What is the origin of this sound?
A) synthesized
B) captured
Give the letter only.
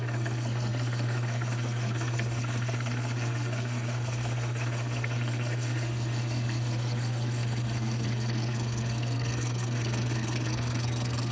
A